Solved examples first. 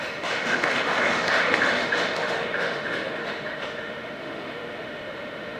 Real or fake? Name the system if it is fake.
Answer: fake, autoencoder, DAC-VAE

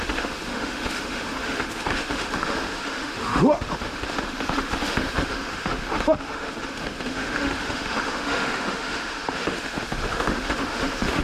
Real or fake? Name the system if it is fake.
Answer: fake, autoencoder, DAC-VAE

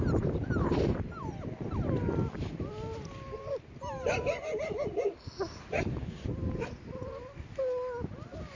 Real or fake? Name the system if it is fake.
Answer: real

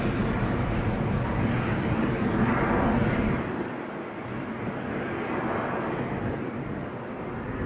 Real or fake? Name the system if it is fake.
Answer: real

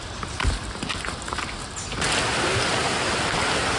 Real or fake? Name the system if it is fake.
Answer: real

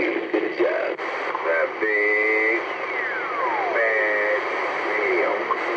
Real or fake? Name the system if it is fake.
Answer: real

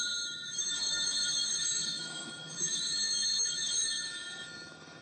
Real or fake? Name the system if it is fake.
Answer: fake, autoencoder, DAC-VAE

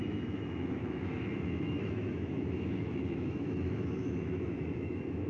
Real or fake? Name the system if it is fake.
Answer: fake, autoencoder, DAC-VAE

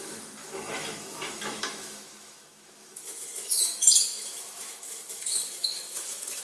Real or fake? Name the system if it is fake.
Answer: fake, autoencoder, DAC-VAE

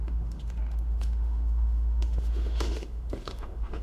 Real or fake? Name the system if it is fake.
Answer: fake, autoencoder, DAC-VAE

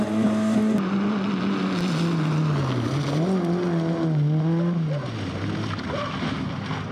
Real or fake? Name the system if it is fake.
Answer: real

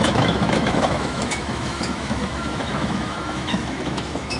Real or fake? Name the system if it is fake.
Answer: fake, autoencoder, DAC-VAE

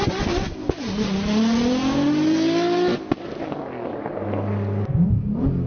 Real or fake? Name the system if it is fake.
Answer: real